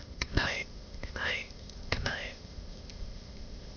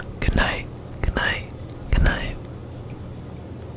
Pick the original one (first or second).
second